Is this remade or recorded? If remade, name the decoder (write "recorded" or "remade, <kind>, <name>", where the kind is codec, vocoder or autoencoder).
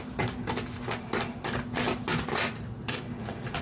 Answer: recorded